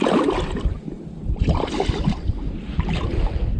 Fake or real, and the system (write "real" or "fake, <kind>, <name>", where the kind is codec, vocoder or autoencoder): real